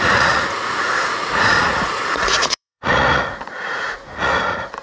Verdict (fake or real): fake